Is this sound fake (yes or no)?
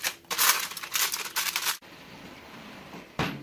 yes